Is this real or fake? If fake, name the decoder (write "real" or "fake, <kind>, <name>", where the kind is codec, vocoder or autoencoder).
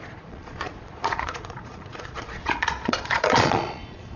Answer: fake, vocoder, Vocos